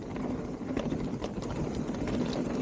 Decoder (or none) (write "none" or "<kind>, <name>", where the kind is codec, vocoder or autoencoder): none